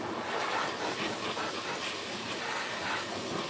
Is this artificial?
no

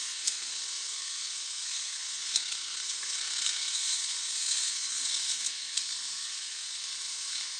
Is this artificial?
yes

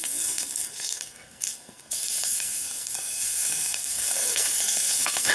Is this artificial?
yes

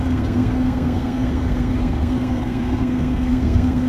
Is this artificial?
yes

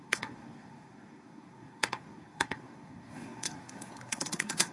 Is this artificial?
yes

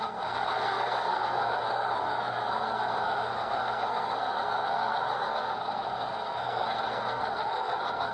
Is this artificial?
yes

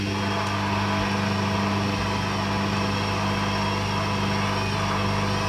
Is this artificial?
no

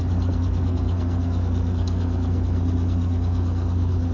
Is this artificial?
yes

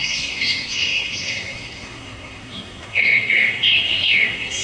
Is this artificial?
yes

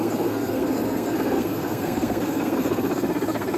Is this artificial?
yes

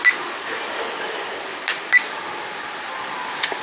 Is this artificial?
no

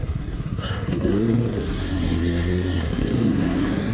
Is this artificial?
yes